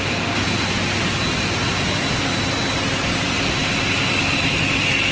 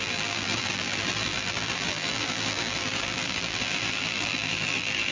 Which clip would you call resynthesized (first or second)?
second